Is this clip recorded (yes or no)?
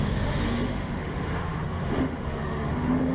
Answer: no